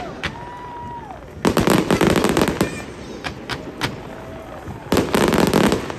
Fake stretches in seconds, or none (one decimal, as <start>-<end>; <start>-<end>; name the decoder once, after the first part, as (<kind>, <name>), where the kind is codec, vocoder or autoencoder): none